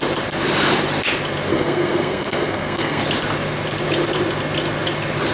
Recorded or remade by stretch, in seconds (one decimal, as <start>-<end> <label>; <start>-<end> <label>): 0.0-1.5 recorded; 1.5-3.0 remade; 3.0-5.3 recorded